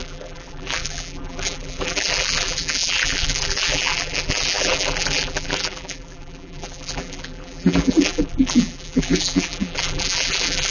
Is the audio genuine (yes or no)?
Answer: no